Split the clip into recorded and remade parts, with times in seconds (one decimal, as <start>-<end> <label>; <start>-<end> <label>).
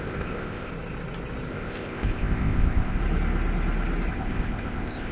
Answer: 0.0-0.7 remade; 0.7-1.5 recorded; 1.5-3.0 remade; 3.0-4.1 recorded; 4.1-5.1 remade